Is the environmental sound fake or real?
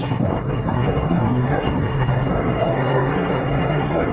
fake